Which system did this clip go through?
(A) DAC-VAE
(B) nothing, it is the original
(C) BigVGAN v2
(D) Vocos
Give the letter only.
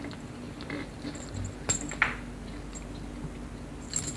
B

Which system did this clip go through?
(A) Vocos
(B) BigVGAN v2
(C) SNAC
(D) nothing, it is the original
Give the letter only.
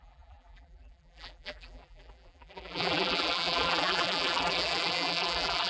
B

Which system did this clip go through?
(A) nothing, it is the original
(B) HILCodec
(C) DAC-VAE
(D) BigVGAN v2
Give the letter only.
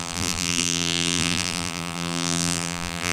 D